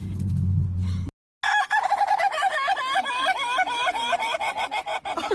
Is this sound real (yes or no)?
yes